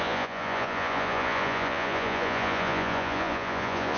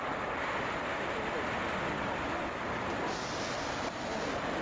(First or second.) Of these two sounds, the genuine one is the second